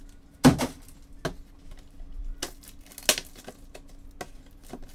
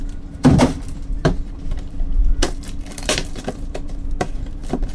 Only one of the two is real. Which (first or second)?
first